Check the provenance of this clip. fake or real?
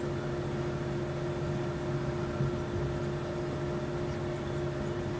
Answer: real